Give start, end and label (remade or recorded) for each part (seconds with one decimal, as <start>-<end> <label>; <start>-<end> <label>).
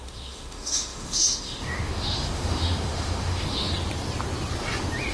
0.0-3.7 remade; 3.7-5.1 recorded